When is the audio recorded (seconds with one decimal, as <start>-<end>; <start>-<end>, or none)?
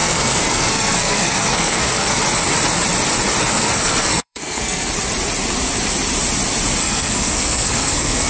2.2-3.6; 4.9-6.8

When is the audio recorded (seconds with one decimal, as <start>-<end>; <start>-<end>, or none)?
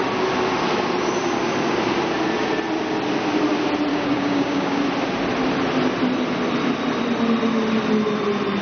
0.0-3.9; 4.8-8.6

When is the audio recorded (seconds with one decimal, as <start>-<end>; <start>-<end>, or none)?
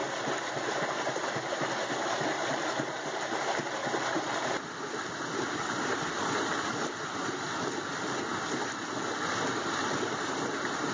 0.0-10.9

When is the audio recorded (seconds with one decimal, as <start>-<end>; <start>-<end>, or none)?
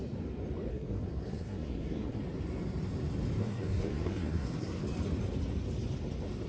0.0-0.7; 2.2-3.4; 4.8-6.5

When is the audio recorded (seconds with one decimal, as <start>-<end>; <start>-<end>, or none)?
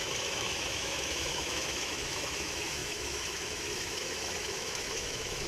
none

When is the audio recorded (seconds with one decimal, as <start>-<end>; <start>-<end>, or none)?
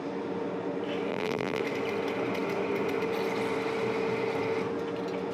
0.0-1.1; 1.6-5.3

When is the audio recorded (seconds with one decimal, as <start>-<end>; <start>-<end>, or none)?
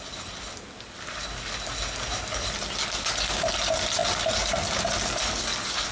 0.0-5.9